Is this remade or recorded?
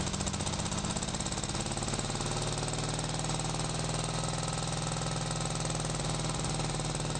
recorded